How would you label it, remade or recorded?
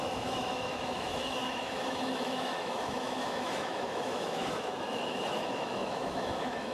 remade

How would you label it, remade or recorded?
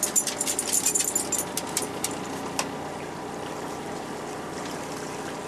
recorded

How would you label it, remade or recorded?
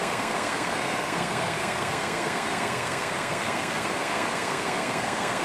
remade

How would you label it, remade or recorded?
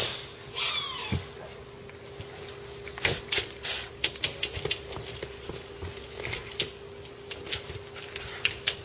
recorded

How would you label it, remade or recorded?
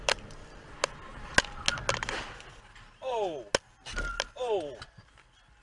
recorded